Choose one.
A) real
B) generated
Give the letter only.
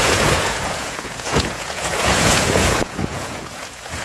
B